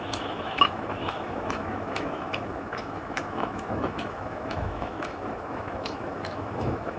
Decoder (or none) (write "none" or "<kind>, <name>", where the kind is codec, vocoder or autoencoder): autoencoder, DAC-VAE